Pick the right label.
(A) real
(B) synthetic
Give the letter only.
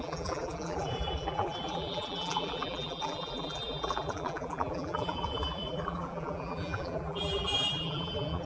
B